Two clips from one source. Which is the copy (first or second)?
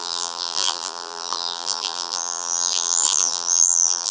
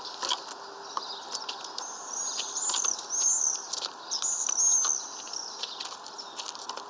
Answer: first